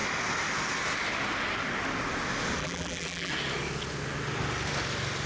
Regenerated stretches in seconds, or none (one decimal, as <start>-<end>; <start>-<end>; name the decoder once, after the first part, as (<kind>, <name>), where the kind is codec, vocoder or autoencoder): 2.6-3.3 (vocoder, BigVGAN v2)